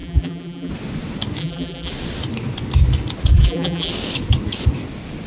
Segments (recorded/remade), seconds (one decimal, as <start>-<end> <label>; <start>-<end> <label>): 0.0-0.7 remade; 0.7-1.4 recorded; 1.4-1.9 remade; 1.9-3.3 recorded; 3.3-3.9 remade; 3.9-5.3 recorded